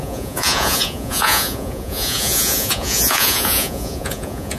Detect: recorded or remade remade